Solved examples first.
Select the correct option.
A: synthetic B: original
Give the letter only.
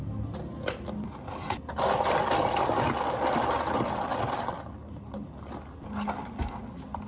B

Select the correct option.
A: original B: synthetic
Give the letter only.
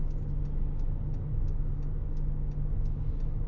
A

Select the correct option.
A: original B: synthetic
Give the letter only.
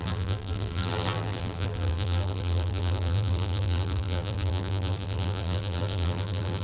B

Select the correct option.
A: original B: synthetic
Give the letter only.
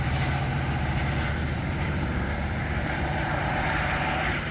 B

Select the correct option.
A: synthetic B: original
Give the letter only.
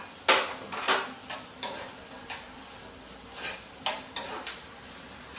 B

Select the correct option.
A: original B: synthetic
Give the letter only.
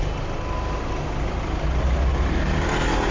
A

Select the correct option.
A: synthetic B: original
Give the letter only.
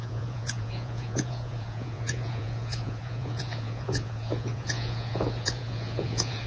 A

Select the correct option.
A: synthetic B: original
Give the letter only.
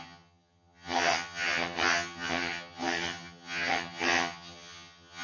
A